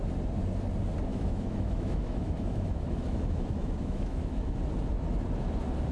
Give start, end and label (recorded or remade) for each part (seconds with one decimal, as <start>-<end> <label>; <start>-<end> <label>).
0.0-1.1 recorded; 1.1-4.6 remade; 4.6-5.9 recorded